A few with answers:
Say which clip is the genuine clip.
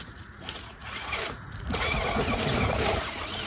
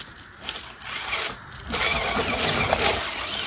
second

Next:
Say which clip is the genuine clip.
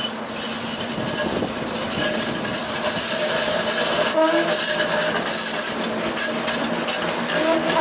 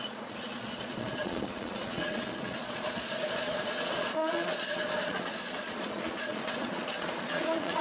first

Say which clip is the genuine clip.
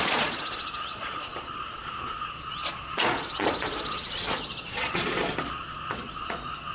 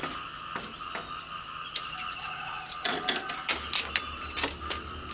second